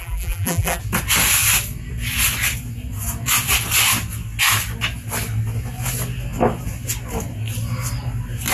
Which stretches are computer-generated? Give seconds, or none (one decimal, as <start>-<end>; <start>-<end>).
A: 0.0-0.8